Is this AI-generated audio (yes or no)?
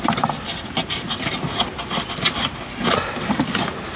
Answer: no